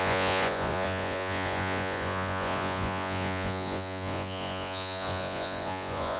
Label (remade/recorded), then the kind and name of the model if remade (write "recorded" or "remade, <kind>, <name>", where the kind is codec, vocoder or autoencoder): remade, vocoder, Vocos